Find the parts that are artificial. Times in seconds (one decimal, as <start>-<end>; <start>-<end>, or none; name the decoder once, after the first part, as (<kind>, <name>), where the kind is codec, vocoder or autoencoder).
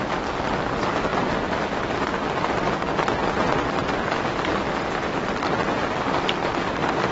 none